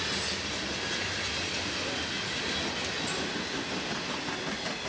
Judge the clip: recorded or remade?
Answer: recorded